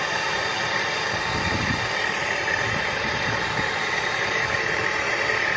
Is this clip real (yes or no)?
yes